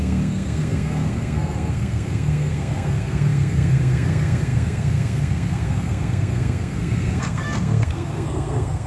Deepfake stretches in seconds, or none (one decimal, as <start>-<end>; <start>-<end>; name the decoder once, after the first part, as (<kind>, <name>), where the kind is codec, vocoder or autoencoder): 0.0-8.9 (codec, SNAC)